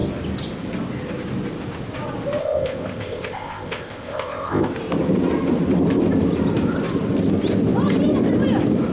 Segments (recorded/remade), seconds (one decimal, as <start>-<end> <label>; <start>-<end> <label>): 0.0-2.4 recorded; 2.4-4.7 remade; 4.7-8.9 recorded